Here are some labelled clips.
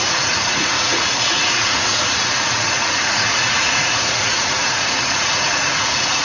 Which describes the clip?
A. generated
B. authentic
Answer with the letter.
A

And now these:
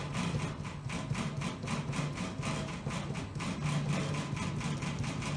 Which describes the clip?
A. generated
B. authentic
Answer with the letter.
B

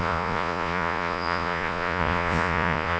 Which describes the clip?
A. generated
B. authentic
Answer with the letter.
A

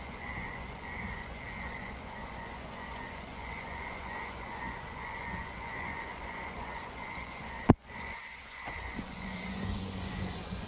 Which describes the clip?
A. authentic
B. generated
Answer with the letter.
B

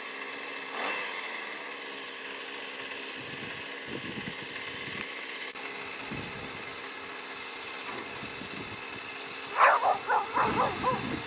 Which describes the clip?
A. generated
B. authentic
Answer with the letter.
B